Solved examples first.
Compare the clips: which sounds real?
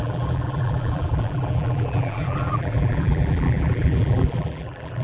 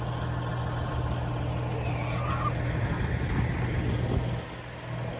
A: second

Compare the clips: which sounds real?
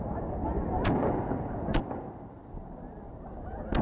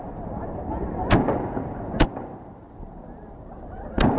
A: first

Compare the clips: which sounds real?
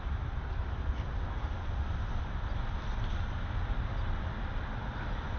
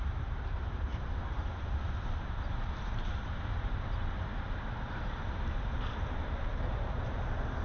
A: first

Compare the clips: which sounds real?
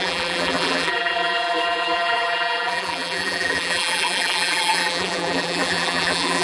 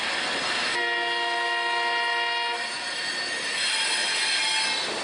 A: second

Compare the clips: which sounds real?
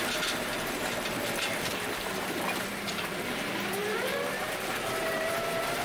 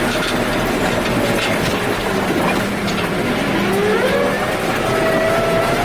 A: second